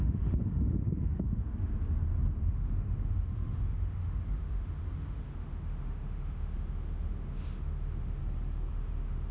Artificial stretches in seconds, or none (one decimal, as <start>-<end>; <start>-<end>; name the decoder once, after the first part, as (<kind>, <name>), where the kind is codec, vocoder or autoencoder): 0.0-1.5 (autoencoder, DAC-VAE); 2.4-8.2; 8.7-9.3